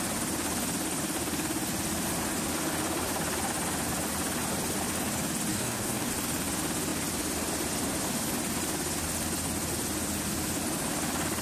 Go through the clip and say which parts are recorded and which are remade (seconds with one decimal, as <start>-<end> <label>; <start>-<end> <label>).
0.0-5.5 recorded; 5.5-6.1 remade; 6.1-11.4 recorded